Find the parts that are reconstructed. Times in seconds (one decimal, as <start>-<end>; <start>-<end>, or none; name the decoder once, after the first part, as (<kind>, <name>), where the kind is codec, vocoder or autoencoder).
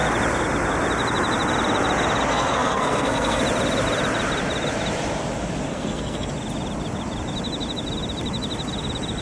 2.3-3.4 (codec, SNAC); 5.7-6.3